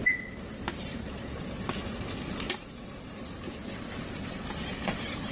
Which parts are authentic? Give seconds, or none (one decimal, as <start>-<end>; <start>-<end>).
1.2-4.1